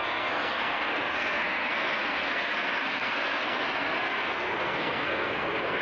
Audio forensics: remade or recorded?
remade